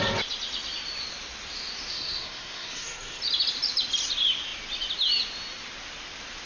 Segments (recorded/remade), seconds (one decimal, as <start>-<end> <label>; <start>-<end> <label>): 0.0-1.9 recorded; 1.9-3.2 remade; 3.2-6.5 recorded